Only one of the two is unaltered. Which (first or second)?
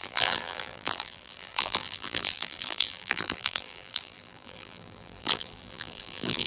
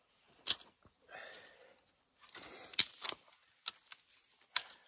second